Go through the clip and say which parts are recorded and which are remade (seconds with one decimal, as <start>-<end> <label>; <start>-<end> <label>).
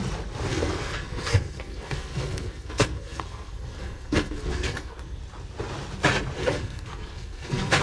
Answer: 0.0-0.5 recorded; 0.5-5.2 remade; 5.2-6.4 recorded; 6.4-7.8 remade